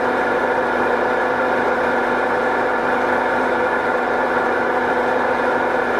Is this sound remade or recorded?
remade